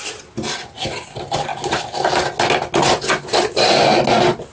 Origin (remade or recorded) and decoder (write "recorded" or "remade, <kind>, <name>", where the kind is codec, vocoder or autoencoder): recorded